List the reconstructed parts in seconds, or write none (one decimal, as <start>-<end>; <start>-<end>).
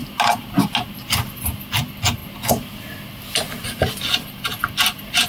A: none